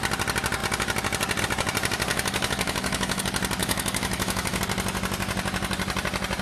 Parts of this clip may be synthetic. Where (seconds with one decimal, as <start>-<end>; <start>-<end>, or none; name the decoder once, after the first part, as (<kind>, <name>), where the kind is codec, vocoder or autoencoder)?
2.1-3.2 (autoencoder, DAC-VAE); 3.6-4.6